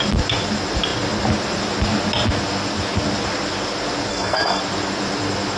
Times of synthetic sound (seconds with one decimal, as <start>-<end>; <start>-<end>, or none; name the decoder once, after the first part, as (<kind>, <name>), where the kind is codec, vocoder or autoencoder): 4.1-4.6 (codec, SNAC)